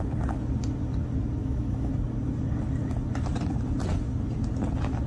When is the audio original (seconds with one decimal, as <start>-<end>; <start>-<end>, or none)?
0.0-1.4; 1.9-5.1